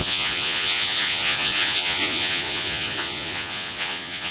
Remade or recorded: remade